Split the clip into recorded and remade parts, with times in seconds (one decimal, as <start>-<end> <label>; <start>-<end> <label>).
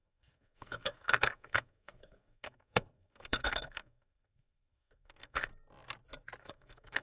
0.0-5.5 remade; 5.5-6.4 recorded; 6.4-7.0 remade